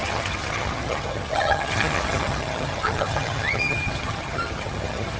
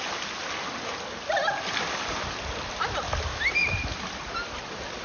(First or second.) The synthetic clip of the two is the first